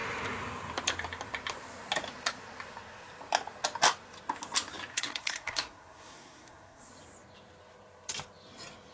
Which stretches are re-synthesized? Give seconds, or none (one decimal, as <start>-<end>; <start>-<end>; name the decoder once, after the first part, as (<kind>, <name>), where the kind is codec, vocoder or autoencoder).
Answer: 4.9-6.9 (codec, SNAC)